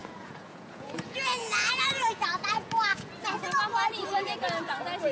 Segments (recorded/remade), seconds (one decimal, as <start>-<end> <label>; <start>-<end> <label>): 0.0-3.1 remade; 3.1-5.1 recorded